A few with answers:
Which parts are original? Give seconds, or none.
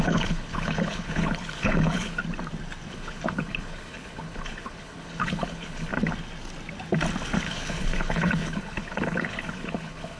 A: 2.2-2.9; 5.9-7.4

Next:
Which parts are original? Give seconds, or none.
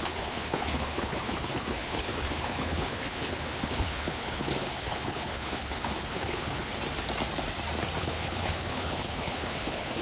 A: 6.7-8.0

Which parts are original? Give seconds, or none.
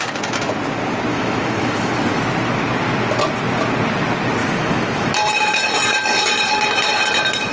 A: 0.0-1.1; 1.9-4.4; 5.1-7.5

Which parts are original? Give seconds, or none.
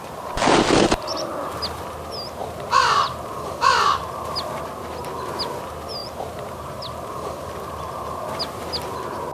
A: 0.0-2.4; 4.0-6.0; 8.1-9.3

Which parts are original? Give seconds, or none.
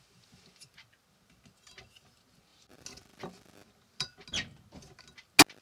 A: 0.0-5.6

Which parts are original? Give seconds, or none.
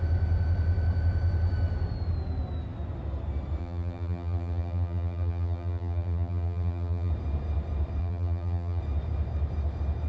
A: 0.0-3.6; 7.1-8.0; 8.8-10.1